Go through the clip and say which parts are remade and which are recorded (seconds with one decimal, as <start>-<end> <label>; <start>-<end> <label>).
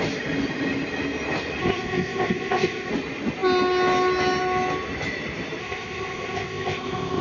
0.0-1.6 recorded; 1.6-2.9 remade; 2.9-5.6 recorded; 5.6-7.2 remade